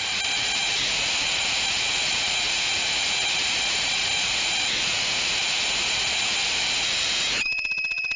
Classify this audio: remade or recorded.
remade